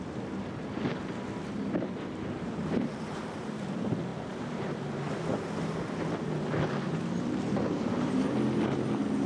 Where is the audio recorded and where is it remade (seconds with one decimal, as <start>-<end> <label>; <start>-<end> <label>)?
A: 0.0-9.3 recorded